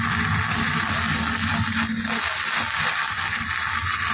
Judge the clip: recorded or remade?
recorded